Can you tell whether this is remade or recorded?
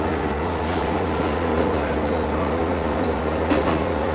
remade